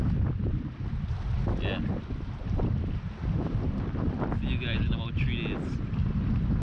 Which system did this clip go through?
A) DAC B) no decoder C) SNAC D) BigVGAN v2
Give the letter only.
B